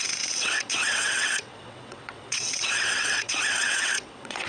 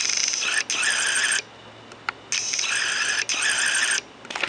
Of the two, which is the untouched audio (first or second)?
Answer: second